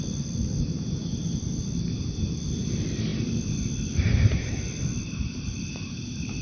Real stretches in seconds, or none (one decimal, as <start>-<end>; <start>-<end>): 0.0-1.0; 1.7-3.1; 5.7-6.4